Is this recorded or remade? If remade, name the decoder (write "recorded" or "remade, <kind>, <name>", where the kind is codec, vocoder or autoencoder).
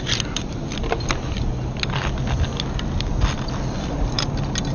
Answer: recorded